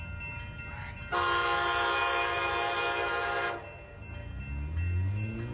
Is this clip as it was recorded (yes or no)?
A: yes